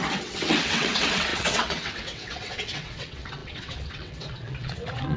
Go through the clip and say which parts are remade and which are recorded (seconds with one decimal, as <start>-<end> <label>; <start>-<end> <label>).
0.0-5.2 remade